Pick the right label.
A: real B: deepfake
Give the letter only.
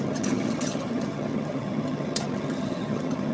B